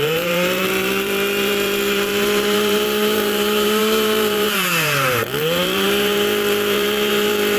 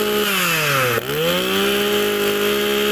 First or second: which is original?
second